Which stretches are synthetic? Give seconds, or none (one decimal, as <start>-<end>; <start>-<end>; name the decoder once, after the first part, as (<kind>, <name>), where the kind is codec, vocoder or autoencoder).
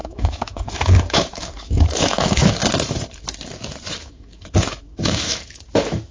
0.0-2.6 (autoencoder, DAC-VAE); 4.0-6.1